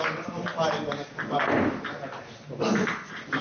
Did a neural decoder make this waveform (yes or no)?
yes